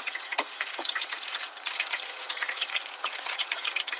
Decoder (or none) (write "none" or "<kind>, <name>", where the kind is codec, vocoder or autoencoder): vocoder, Vocos